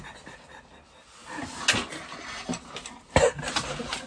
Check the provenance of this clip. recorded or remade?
recorded